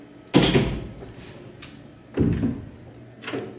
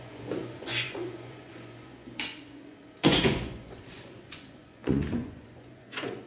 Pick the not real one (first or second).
second